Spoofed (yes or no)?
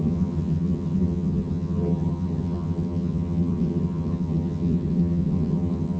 yes